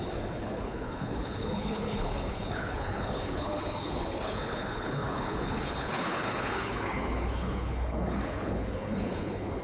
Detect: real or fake fake